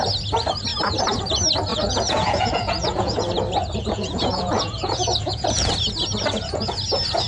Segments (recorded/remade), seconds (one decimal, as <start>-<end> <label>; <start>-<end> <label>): 0.0-1.7 recorded; 1.7-3.3 remade; 3.3-3.8 recorded; 3.8-5.7 remade; 5.7-7.3 recorded